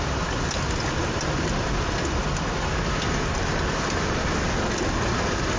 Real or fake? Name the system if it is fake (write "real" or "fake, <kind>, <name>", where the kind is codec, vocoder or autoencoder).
real